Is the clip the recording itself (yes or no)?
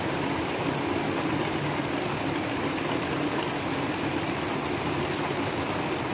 yes